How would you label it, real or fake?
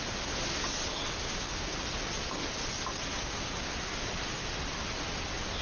real